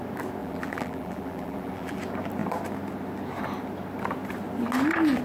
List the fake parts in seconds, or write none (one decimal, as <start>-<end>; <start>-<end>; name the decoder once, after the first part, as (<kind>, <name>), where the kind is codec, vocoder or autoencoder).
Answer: 0.4-2.0 (vocoder, BigVGAN v2)